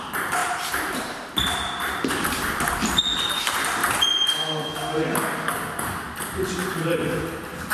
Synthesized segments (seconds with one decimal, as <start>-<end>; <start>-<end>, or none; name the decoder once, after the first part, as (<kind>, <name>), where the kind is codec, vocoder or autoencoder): 0.4-2.7 (vocoder, BigVGAN v2); 6.6-7.2

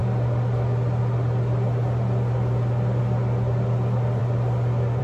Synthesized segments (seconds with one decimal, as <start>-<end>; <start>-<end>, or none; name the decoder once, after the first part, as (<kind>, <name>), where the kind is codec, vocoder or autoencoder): none